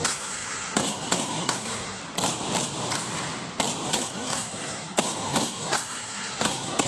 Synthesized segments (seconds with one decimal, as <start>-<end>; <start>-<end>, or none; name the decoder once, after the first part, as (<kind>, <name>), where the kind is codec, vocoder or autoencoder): 0.0-2.0 (codec, SNAC); 3.9-6.9